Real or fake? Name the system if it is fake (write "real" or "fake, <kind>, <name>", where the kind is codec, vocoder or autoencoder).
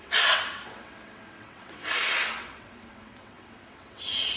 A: fake, vocoder, WaveNeXt